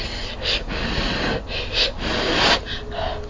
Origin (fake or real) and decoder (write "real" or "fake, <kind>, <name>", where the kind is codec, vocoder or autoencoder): real